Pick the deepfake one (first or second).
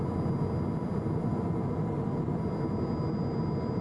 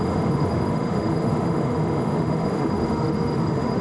second